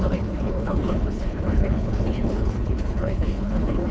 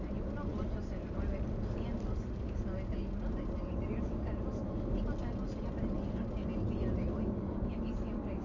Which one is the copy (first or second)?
first